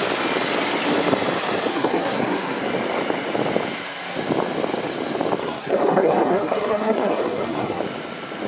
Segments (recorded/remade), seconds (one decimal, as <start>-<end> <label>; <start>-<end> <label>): 0.0-1.7 recorded; 1.7-2.6 remade; 2.6-5.4 recorded; 5.4-7.8 remade; 7.8-8.5 recorded